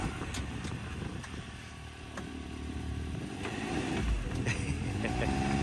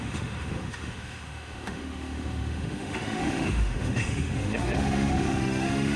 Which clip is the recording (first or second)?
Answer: first